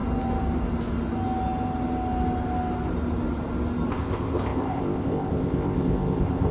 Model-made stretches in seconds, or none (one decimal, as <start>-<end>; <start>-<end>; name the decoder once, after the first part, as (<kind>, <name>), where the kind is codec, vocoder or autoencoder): 3.9-6.5 (codec, ZipCodec)